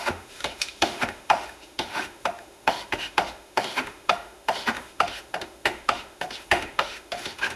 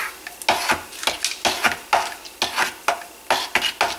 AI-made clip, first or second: first